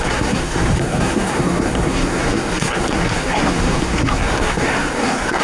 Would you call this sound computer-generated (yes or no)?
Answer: yes